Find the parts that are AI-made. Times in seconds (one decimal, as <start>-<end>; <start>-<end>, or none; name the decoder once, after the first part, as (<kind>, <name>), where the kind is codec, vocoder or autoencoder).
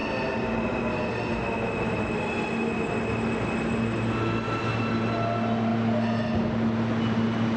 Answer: none